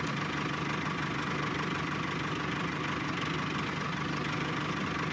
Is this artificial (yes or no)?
no